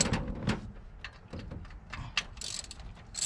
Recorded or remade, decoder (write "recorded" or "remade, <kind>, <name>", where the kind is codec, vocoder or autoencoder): recorded